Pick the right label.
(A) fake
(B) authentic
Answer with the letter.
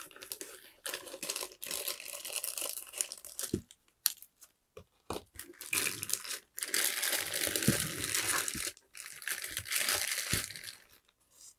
A